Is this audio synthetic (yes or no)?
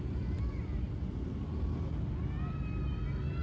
no